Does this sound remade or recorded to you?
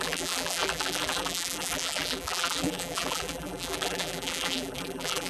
remade